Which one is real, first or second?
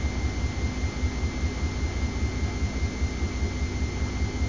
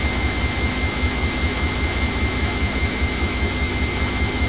first